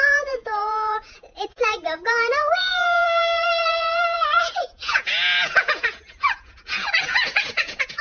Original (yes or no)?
no